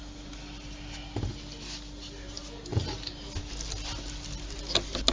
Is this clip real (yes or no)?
yes